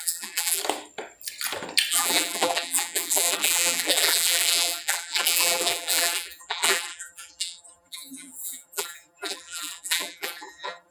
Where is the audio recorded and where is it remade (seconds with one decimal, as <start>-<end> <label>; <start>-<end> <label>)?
0.0-0.6 remade; 0.6-1.9 recorded; 1.9-10.9 remade